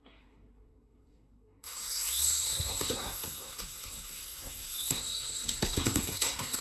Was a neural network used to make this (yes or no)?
yes